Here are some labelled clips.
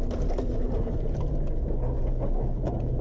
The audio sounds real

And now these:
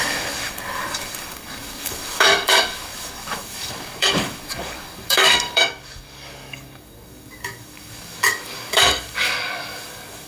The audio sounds fake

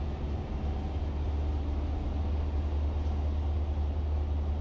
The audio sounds real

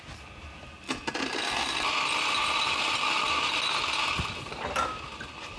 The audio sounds real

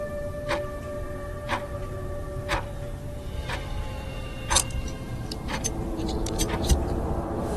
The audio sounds fake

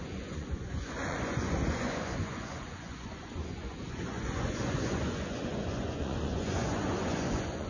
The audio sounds fake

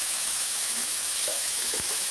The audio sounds fake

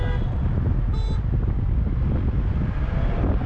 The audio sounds real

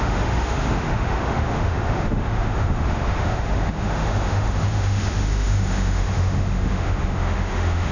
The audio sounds fake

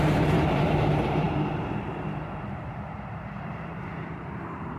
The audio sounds fake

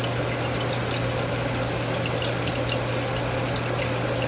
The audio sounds real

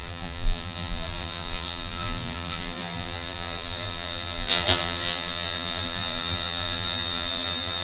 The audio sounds fake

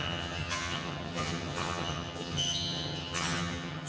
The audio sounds fake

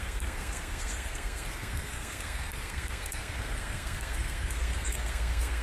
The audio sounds fake